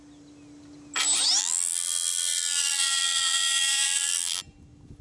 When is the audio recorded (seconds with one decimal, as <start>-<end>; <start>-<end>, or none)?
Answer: 0.0-1.4; 4.4-5.0